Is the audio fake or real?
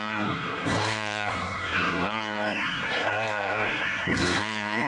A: fake